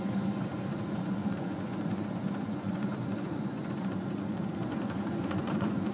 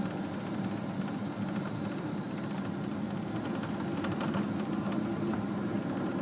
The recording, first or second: second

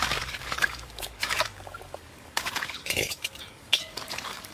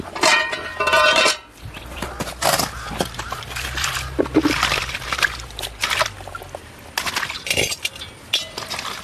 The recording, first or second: second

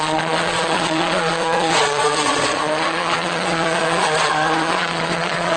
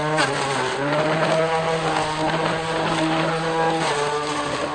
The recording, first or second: second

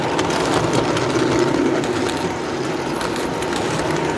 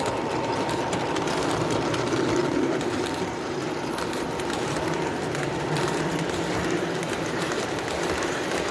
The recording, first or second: first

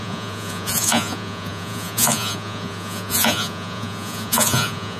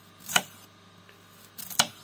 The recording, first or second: second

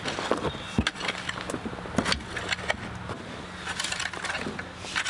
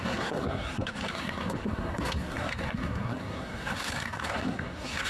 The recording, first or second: first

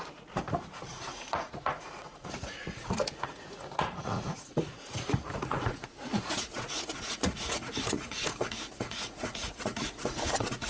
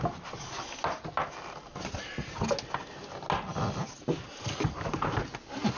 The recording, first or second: second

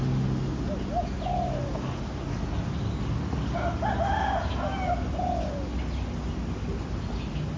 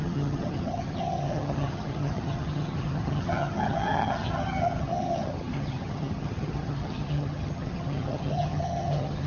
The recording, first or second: first